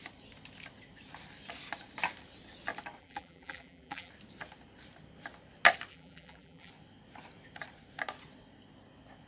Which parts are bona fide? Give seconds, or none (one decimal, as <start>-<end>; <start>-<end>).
0.0-3.0; 4.1-5.9; 6.7-9.3